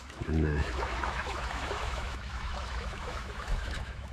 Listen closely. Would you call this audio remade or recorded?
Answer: remade